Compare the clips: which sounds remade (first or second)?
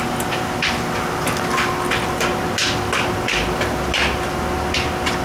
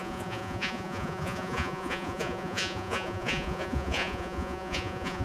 second